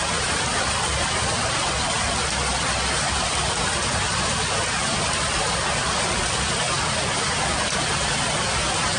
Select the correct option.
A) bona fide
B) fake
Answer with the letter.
A